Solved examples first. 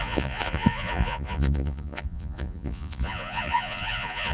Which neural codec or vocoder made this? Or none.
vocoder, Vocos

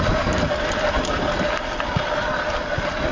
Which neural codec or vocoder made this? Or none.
none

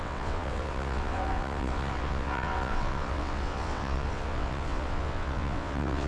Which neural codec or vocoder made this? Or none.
vocoder, WaveNeXt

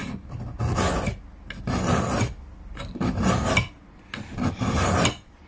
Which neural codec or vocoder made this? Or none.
none